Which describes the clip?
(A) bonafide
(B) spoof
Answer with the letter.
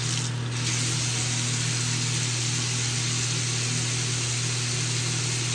A